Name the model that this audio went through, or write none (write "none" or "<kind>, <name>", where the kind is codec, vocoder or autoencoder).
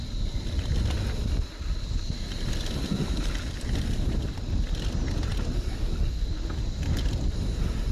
none